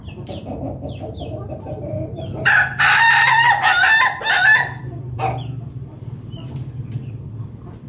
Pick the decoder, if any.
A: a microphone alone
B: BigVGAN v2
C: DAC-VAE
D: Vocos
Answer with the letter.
B